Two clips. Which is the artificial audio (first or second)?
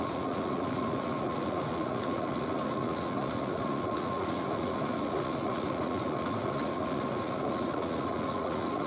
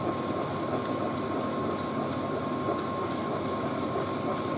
first